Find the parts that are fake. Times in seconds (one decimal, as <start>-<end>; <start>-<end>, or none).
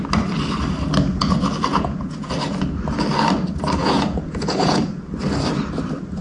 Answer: 1.7-2.3; 3.8-4.9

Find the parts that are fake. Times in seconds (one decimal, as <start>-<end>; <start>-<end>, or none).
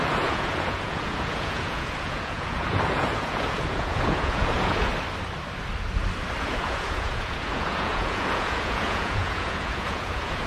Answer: 0.0-4.9; 6.4-10.5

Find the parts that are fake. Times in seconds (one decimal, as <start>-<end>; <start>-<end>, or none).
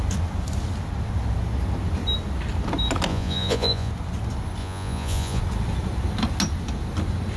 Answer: 3.1-3.9; 4.6-5.4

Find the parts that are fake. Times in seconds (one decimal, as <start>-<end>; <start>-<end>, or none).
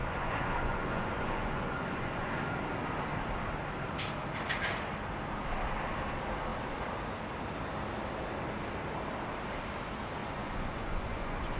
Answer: 0.0-2.4; 10.2-11.6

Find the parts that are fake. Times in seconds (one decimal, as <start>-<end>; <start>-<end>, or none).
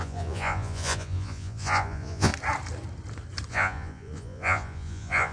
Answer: 0.0-2.3; 3.5-5.3